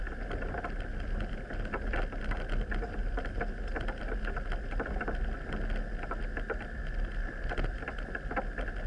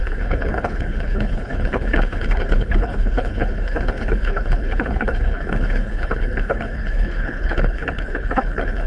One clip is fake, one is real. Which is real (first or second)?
first